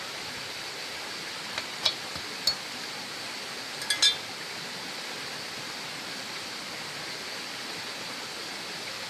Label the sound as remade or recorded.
recorded